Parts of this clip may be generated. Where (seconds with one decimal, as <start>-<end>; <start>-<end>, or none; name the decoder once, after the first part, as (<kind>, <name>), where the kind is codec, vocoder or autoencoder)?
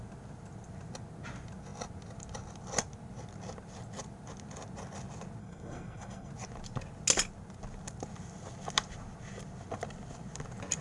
5.4-6.3 (codec, SNAC)